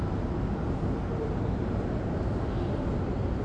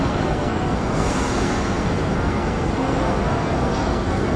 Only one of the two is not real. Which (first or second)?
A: second